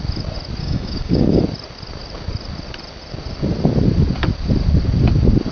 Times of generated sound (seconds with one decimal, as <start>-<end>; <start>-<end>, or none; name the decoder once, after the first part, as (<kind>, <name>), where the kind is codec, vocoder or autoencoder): 0.6-1.4 (codec, DAC)